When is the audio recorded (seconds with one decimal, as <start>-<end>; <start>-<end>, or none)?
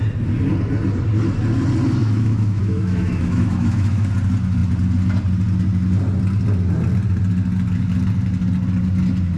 0.0-2.0; 4.1-9.4